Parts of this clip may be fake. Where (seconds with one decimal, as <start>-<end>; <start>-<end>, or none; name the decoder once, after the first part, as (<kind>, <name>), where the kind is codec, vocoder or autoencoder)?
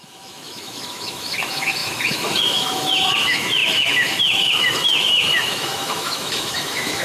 0.0-7.0 (autoencoder, DAC-VAE)